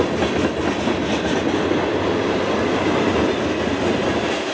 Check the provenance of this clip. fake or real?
real